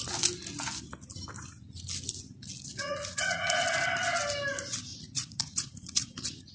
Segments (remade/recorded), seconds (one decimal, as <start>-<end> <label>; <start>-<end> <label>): 0.0-2.8 recorded; 2.8-3.6 remade; 3.6-4.9 recorded; 4.9-6.5 remade